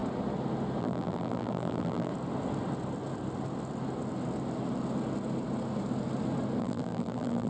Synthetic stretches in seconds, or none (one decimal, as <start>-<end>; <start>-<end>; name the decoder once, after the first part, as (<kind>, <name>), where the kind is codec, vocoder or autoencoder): 0.8-2.1 (vocoder, BigVGAN v2); 6.6-7.5